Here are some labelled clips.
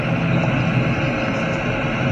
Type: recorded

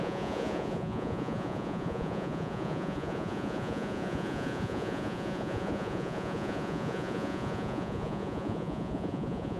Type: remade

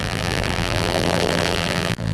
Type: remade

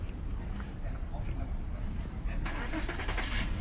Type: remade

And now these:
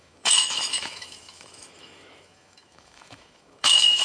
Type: remade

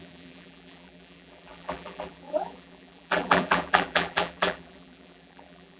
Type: remade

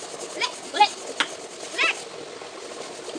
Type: recorded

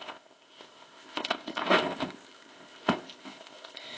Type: remade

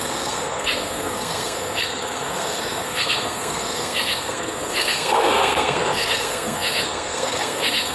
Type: remade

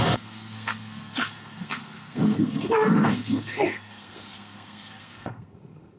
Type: remade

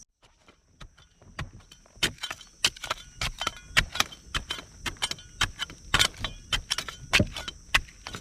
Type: recorded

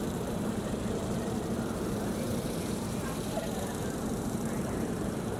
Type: remade